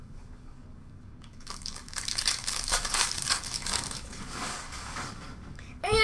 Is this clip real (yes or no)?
no